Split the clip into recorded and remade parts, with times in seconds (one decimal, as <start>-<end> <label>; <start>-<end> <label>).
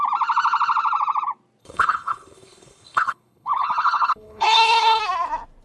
0.0-1.6 recorded; 1.6-5.0 remade; 5.0-5.6 recorded